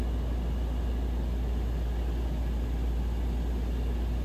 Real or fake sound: real